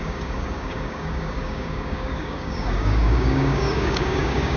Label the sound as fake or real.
fake